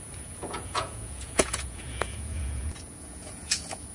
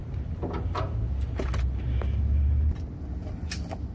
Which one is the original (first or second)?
second